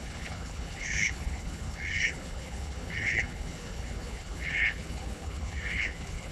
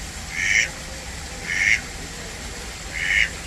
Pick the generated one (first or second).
first